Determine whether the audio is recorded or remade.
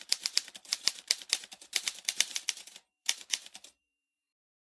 remade